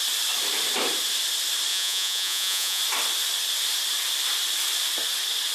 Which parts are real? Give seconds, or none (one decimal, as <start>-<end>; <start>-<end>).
0.0-1.7; 2.8-5.5